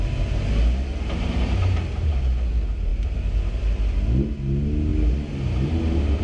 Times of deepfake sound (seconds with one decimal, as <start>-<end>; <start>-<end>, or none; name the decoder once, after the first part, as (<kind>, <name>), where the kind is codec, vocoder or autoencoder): 0.9-2.1 (vocoder, BigVGAN v2)

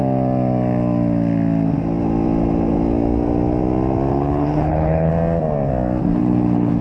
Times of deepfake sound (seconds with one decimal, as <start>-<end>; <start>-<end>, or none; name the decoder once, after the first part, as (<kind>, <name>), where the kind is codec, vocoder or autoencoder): 4.1-5.1 (codec, HILCodec); 6.2-6.8

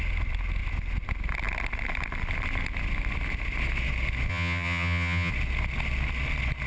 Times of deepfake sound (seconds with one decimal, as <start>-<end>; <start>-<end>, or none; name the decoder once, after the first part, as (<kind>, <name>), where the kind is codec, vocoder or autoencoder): 4.3-5.3 (vocoder, HiFi-GAN)

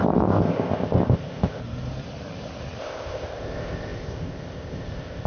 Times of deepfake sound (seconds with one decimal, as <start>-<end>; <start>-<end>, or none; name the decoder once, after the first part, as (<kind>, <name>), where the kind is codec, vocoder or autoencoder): 0.0-1.6 (codec, ZipCodec); 2.8-5.3

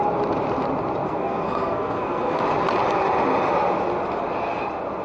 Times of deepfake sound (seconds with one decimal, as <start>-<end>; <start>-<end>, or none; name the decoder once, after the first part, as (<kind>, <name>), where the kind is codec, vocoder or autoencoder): 1.0-2.4 (codec, SNAC)